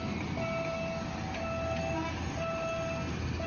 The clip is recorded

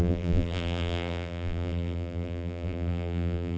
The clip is remade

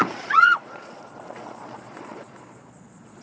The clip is remade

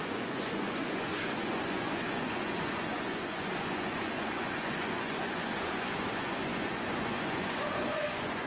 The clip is remade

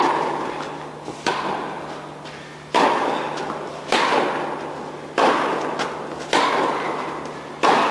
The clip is recorded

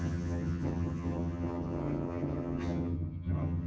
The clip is remade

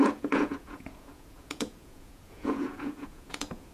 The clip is remade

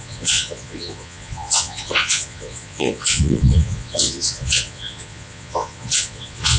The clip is remade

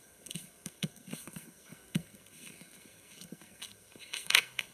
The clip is remade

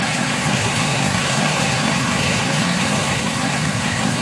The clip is remade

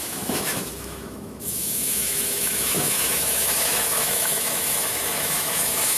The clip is remade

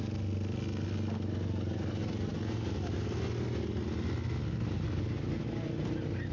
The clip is recorded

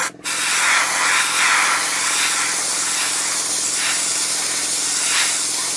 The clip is recorded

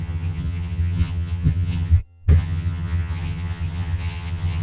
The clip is remade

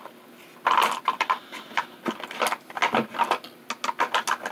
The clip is recorded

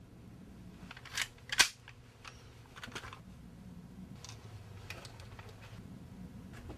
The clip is recorded